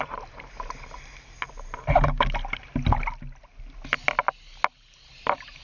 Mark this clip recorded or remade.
recorded